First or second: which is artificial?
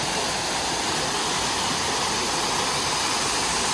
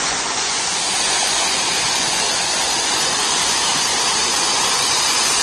second